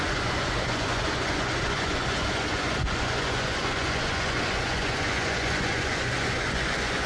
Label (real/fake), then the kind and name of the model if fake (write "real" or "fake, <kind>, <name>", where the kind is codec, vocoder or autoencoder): fake, vocoder, Vocos